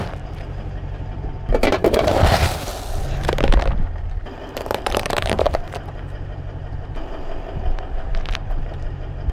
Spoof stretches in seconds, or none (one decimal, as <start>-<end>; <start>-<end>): 0.0-2.7; 4.2-9.3